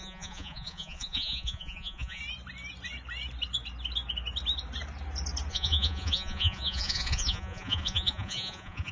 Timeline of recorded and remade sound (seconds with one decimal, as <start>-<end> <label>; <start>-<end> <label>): 0.0-2.2 remade; 2.2-5.5 recorded; 5.5-8.9 remade